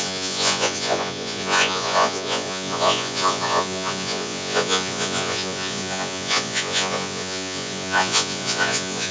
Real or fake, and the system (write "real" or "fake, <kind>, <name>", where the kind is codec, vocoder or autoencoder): fake, vocoder, Vocos